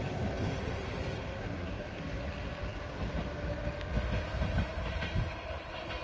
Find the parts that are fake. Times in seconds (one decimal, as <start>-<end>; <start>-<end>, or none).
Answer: 1.4-2.0